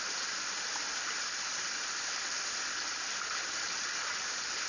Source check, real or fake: real